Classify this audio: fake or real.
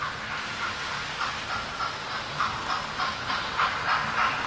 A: real